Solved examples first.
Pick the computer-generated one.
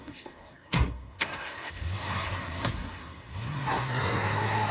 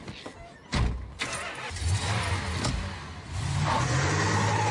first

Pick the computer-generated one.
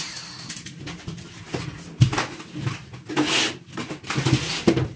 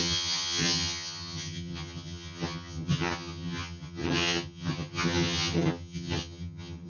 second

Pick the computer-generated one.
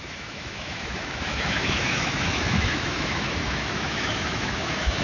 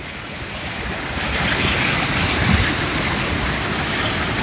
first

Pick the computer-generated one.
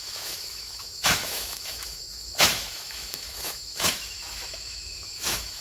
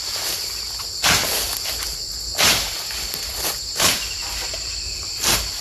first